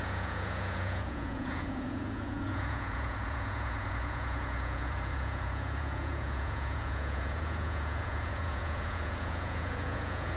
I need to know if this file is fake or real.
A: fake